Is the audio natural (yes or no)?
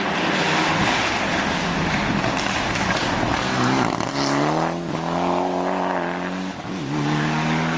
yes